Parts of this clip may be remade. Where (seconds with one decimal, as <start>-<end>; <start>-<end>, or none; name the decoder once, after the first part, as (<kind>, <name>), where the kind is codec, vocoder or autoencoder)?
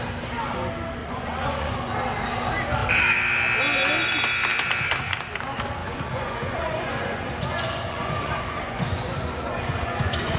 1.0-1.9 (vocoder, Vocos); 5.8-10.4